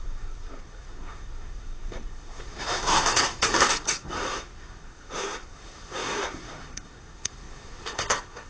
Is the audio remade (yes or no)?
yes